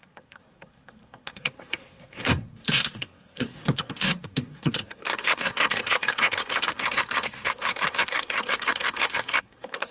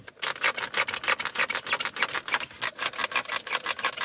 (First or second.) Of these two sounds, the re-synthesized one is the first